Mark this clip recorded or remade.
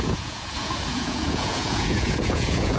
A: remade